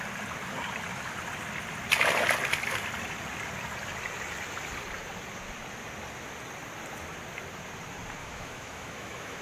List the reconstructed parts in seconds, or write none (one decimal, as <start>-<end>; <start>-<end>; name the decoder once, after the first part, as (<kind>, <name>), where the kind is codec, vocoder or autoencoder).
8.2-9.4 (autoencoder, DAC-VAE)